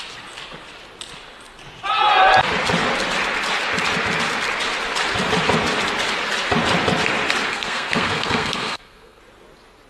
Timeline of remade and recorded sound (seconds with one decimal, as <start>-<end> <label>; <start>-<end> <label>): 0.0-7.5 recorded; 7.5-9.2 remade; 9.2-9.9 recorded